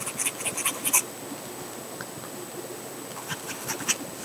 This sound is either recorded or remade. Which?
recorded